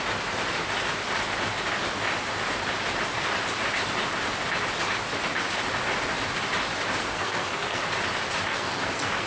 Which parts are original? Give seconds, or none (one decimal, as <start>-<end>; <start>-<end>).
0.0-7.0; 7.8-8.5